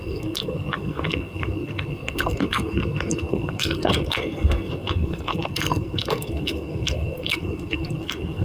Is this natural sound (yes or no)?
no